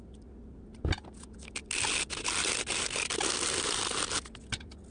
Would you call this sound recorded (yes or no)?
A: yes